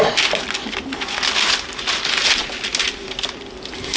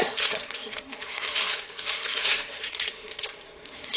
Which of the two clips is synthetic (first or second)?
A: second